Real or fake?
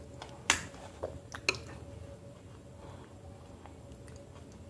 real